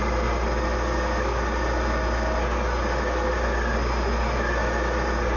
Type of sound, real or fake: real